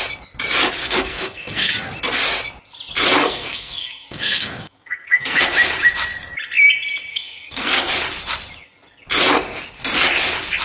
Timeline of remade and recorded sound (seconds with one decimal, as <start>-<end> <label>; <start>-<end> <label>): 0.0-0.8 recorded; 0.8-1.7 remade; 1.7-3.2 recorded; 3.2-5.4 remade; 5.4-7.1 recorded; 7.1-7.9 remade; 7.9-10.6 recorded